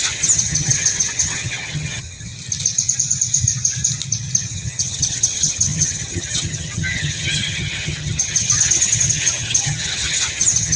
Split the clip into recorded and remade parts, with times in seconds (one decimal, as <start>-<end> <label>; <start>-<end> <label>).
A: 0.0-2.3 remade; 2.3-4.5 recorded; 4.5-10.8 remade